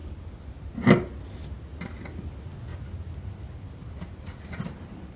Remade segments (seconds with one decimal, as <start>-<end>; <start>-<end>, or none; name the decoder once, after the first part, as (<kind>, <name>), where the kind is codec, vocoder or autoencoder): none